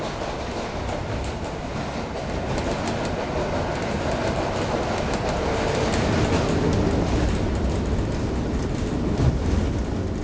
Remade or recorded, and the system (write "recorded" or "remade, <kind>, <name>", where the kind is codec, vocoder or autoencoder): recorded